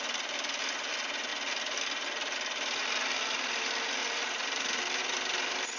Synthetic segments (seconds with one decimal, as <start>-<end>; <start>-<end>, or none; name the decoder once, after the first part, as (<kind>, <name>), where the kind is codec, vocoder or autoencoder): 4.0-5.0 (vocoder, BigVGAN v2)